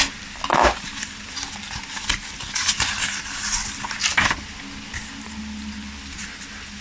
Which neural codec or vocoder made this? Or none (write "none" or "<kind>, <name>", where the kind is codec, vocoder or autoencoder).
none